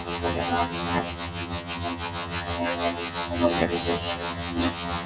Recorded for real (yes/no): no